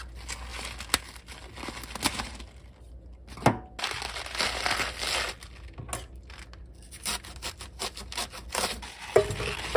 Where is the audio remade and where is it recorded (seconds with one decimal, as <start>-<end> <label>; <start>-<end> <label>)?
0.0-9.8 recorded